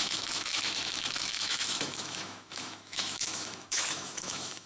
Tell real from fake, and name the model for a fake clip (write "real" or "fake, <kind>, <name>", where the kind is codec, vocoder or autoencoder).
fake, autoencoder, DAC-VAE